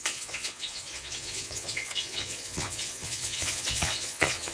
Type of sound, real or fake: fake